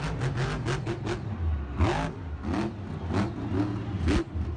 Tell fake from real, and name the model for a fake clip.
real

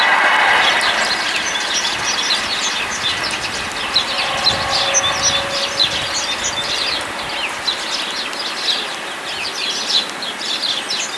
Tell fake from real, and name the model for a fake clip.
real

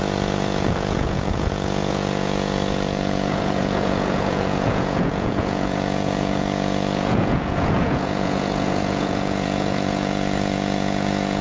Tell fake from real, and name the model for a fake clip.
fake, vocoder, Vocos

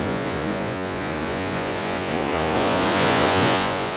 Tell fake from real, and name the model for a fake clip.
fake, vocoder, Vocos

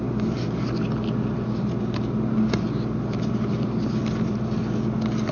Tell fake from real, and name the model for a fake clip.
real